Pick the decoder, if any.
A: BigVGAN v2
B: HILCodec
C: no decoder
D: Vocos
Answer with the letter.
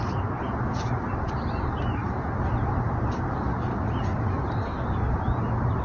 C